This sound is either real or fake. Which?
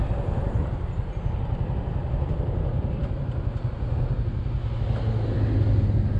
real